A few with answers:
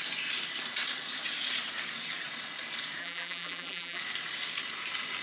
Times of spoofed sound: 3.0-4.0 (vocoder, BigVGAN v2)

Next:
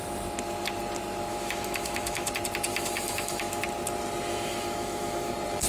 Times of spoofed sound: 1.3-2.3 (autoencoder, DAC-VAE); 2.7-3.6; 4.3-5.3

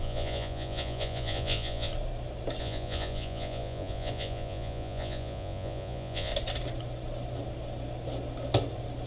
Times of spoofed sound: 0.0-1.9 (vocoder, Vocos); 2.6-6.3

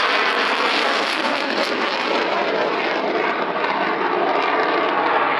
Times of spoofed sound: 0.7-1.7 (codec, SNAC)

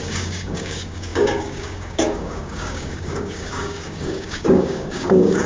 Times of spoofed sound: 0.0-5.5 (codec, DAC)